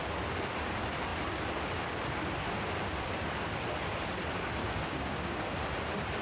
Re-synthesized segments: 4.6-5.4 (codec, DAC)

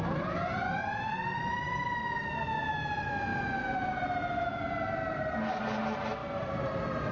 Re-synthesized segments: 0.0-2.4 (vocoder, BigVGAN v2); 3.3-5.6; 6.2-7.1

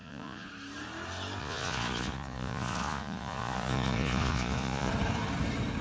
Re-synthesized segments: 0.0-0.5 (vocoder, Vocos); 1.4-4.9